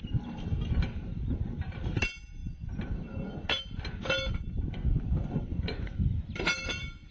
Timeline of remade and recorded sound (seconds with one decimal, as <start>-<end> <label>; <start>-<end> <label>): 0.0-7.1 recorded